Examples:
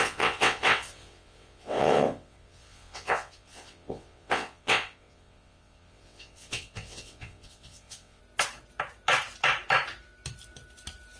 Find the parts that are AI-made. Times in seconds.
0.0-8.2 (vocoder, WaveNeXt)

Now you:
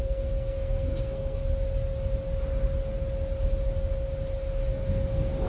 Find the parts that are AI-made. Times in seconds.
0.0-1.4 (codec, SNAC); 4.7-5.5

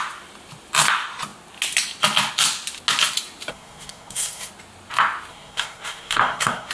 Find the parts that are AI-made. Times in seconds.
3.5-4.5 (codec, SNAC); 5.3-6.7

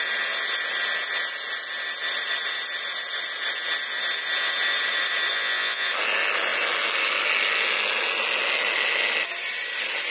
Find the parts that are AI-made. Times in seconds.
5.3-5.9 (vocoder, Vocos)

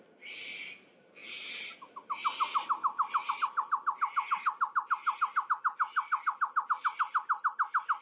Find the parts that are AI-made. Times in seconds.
none

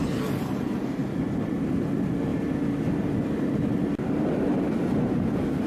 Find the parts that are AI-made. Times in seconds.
1.0-1.9 (vocoder, BigVGAN v2); 2.3-4.7

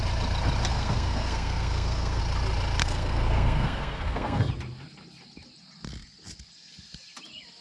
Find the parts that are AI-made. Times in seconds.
0.7-2.2 (codec, SNAC); 2.8-4.5